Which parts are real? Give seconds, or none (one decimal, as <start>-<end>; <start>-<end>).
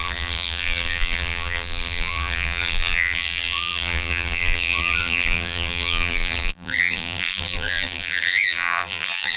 none